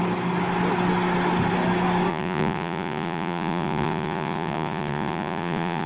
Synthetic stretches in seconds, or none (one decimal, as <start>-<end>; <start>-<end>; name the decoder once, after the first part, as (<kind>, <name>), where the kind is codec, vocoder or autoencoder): 2.1-5.9 (vocoder, Vocos)